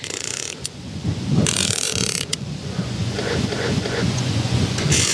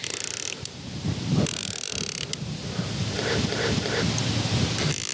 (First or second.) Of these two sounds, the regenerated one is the first